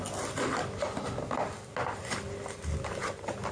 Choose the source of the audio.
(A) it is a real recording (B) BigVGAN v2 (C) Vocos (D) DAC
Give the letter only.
A